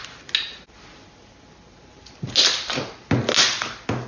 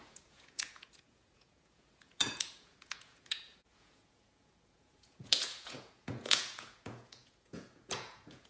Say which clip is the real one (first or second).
first